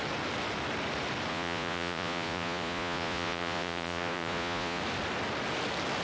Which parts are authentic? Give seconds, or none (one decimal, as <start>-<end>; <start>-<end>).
0.0-1.3; 4.8-6.0